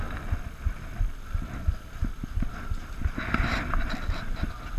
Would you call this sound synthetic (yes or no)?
no